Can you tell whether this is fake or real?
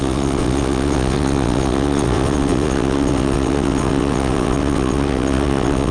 fake